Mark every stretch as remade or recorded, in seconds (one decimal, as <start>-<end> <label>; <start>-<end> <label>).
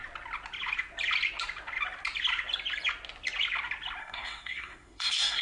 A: 0.0-4.0 recorded; 4.0-5.4 remade